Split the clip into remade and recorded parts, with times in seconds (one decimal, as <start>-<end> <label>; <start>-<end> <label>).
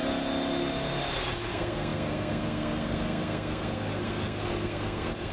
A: 0.0-1.5 recorded; 1.5-5.3 remade